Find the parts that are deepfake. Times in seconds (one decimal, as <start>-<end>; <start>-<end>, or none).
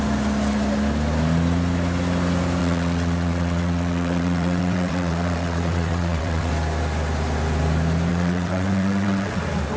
2.6-6.5; 8.1-9.4